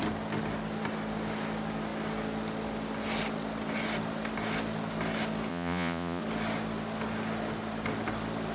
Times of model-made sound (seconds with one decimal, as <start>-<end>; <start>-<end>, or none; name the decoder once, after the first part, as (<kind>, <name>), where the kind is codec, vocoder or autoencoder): 5.5-6.2 (vocoder, Vocos)